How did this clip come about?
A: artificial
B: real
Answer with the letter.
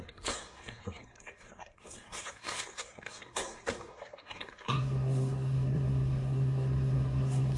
A